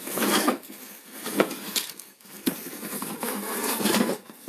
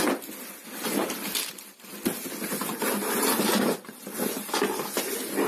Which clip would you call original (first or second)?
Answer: second